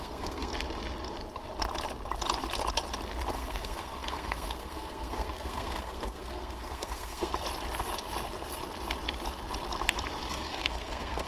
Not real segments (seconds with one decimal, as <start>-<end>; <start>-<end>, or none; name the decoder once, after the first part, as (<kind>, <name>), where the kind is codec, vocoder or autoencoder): 0.0-0.5 (codec, SNAC); 3.3-7.3; 10.3-11.3